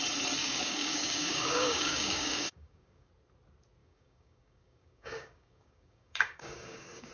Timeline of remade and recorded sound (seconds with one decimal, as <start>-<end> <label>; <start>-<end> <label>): 0.0-0.4 recorded; 0.4-3.1 remade; 3.1-3.8 recorded; 3.8-7.1 remade